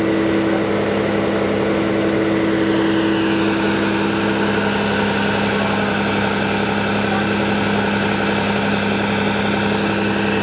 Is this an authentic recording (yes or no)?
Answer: yes